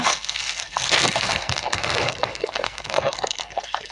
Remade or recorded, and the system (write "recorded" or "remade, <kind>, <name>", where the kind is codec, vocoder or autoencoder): remade, codec, SNAC